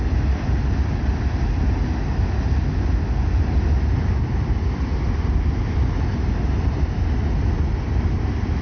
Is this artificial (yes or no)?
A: no